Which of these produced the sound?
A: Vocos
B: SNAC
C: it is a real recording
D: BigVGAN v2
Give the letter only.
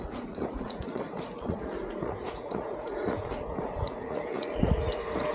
A